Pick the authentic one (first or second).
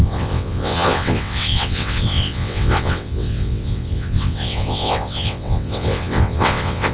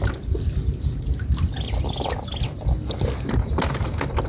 second